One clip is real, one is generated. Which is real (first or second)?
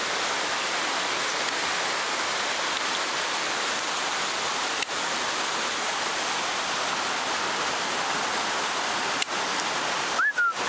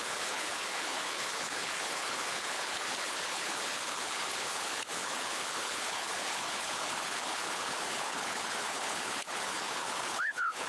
first